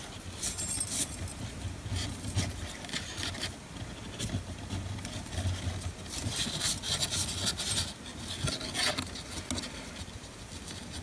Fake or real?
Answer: real